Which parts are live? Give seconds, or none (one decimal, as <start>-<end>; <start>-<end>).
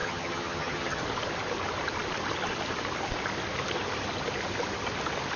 1.0-5.4